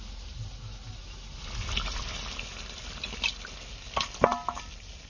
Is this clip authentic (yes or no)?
yes